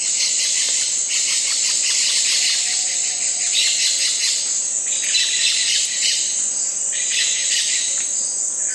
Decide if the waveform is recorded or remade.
recorded